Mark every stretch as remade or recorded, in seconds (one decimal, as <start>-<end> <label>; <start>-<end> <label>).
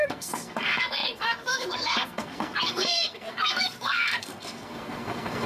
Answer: 0.0-5.5 remade